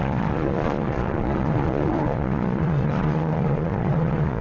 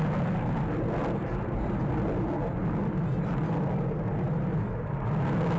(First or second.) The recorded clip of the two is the second